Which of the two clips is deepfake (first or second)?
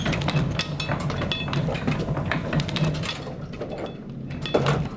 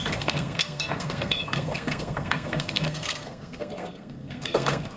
second